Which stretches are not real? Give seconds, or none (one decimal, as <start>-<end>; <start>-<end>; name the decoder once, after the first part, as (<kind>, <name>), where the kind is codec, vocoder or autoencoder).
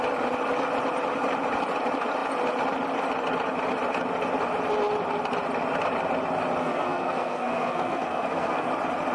6.6-8.7 (codec, SNAC)